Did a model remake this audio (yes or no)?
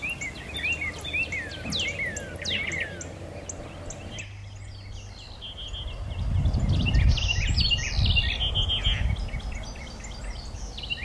no